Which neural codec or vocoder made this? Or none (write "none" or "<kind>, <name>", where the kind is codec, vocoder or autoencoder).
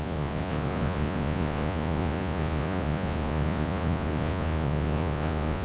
vocoder, Vocos